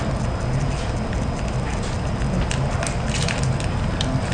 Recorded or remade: recorded